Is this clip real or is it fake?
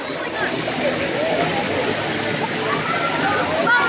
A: real